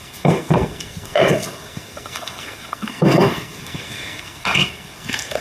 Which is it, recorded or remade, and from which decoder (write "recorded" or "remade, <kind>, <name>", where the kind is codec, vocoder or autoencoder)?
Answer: remade, codec, SNAC